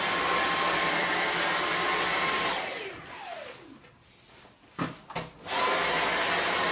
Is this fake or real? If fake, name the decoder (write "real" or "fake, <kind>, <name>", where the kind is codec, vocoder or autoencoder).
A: real